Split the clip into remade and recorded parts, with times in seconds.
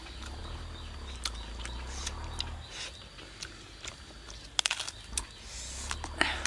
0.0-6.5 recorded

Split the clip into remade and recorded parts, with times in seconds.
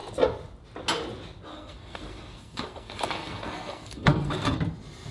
0.0-1.5 recorded; 1.5-4.6 remade; 4.6-5.1 recorded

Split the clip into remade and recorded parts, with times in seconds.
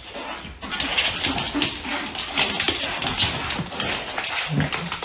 0.0-5.0 recorded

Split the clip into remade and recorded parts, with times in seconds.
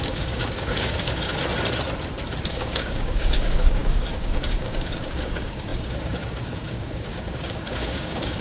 0.0-1.3 remade; 1.3-2.5 recorded; 2.5-8.4 remade